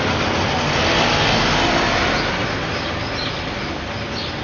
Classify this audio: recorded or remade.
recorded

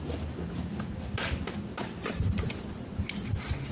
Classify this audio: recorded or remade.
recorded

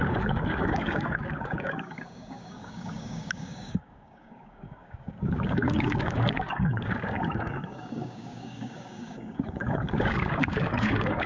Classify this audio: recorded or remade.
remade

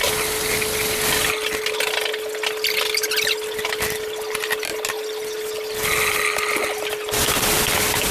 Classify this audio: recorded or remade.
recorded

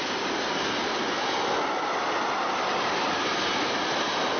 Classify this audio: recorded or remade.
recorded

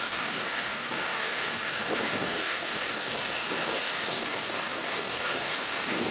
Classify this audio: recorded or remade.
remade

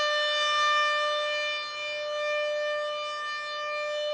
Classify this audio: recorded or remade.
recorded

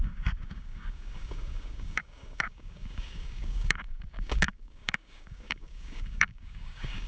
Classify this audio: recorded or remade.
remade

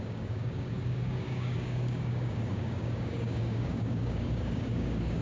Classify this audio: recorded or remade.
remade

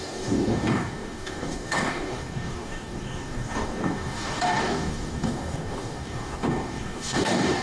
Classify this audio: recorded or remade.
remade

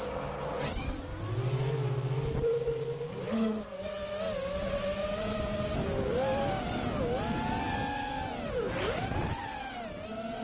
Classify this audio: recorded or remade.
recorded